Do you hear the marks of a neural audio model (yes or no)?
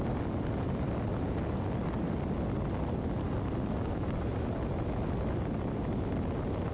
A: no